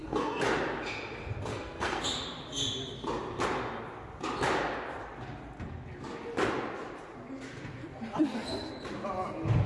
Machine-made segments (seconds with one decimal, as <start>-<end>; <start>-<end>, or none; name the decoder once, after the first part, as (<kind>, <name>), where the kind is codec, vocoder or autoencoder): 0.0-0.5 (codec, SNAC); 1.5-2.0